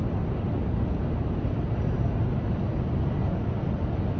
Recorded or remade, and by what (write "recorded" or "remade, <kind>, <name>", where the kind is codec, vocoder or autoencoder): recorded